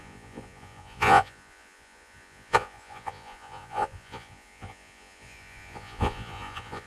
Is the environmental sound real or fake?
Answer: fake